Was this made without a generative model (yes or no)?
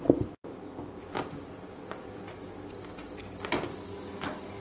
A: yes